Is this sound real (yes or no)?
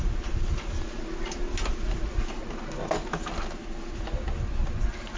yes